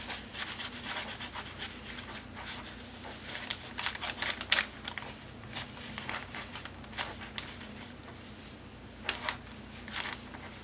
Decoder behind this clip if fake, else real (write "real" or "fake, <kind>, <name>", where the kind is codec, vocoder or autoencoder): real